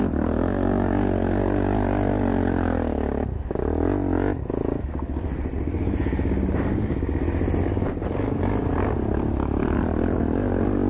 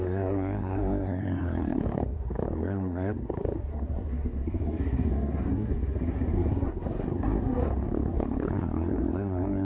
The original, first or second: first